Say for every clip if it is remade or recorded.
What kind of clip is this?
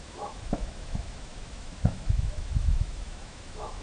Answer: remade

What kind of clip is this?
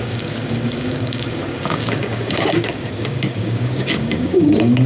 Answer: remade